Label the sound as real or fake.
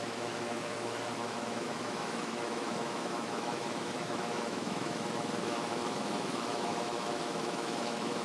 fake